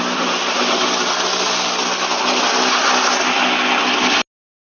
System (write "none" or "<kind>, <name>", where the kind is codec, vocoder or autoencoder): none